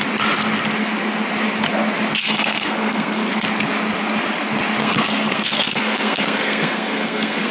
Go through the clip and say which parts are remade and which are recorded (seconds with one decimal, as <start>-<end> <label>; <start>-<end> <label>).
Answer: 0.0-2.2 recorded; 2.2-3.3 remade; 3.3-4.8 recorded; 4.8-7.5 remade